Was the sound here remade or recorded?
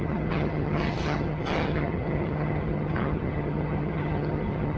remade